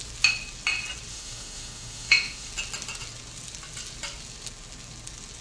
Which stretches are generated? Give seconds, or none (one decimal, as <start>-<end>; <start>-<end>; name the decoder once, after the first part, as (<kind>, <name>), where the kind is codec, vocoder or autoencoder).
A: 1.1-2.5 (autoencoder, DAC-VAE)